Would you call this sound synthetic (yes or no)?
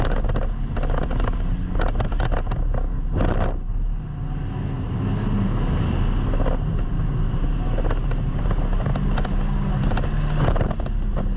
no